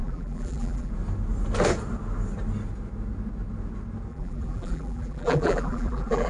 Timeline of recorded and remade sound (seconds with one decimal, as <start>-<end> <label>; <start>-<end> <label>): 0.0-0.9 remade; 0.9-4.1 recorded; 4.1-6.3 remade